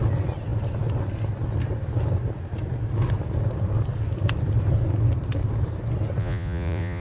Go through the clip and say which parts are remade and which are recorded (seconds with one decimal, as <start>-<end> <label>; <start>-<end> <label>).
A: 0.0-6.2 recorded; 6.2-7.0 remade